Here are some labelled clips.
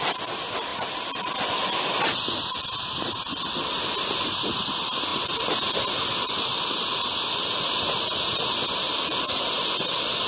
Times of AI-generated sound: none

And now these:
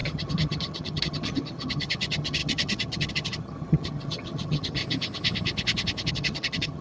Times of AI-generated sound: 0.0-4.8 (vocoder, HiFi-GAN); 6.1-6.8

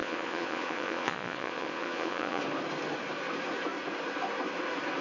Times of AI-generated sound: 0.0-2.4 (vocoder, Vocos)

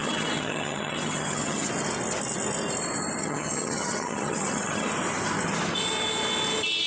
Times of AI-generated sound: 0.0-1.7 (vocoder, HiFi-GAN); 3.2-4.9

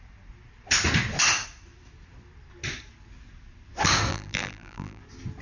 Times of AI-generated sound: 4.1-5.0 (vocoder, BigVGAN v2)

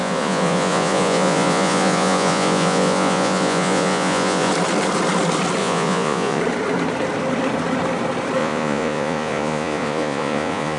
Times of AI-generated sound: 0.0-4.5 (vocoder, Vocos); 5.6-6.4; 8.4-10.8

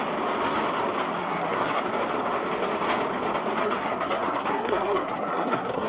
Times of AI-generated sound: 1.2-1.8 (codec, SNAC); 3.6-5.9